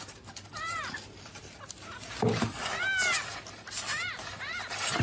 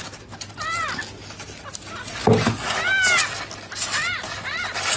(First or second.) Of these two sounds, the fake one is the first